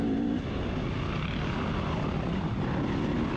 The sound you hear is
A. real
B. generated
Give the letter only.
A